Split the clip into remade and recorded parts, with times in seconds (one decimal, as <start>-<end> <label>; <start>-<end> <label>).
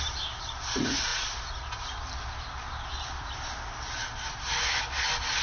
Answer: 0.0-5.4 recorded